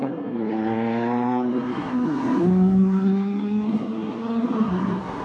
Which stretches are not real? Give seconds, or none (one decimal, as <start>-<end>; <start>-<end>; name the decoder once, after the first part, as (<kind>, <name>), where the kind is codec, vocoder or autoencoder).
0.0-5.2 (codec, SNAC)